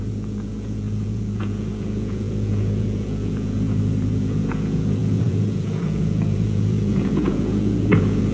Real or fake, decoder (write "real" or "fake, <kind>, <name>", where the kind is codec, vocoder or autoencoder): fake, vocoder, Vocos